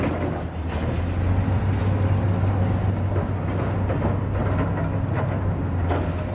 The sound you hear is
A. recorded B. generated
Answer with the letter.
A